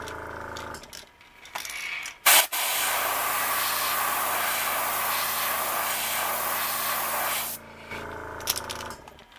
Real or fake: real